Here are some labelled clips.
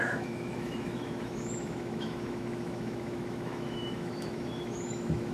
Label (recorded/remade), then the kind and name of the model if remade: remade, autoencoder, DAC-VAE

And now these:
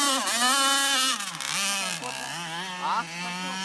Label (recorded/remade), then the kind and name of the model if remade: recorded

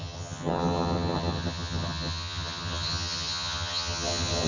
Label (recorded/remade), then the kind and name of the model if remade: remade, vocoder, HiFi-GAN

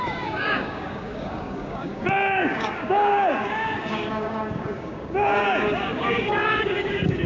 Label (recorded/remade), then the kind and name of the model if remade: remade, codec, DAC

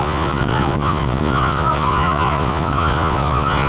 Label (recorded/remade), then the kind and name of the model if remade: remade, vocoder, Vocos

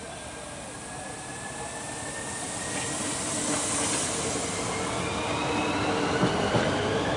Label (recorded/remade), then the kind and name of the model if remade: recorded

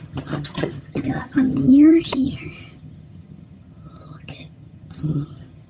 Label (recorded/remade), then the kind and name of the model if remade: remade, vocoder, HiFi-GAN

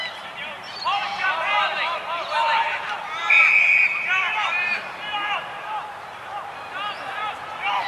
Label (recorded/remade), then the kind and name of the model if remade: remade, vocoder, BigVGAN v2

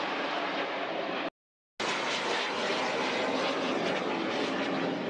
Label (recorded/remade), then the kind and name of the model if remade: recorded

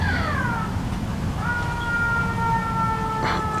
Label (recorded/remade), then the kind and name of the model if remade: recorded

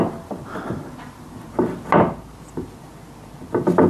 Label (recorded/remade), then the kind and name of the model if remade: recorded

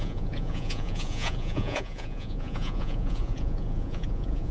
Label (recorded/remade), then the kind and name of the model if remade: remade, vocoder, Vocos